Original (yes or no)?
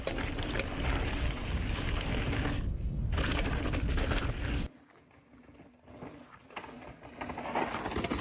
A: yes